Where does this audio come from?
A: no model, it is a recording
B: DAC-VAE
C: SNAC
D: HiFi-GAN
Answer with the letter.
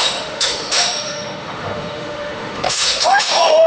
B